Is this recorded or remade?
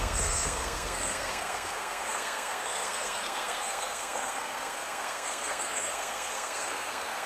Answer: remade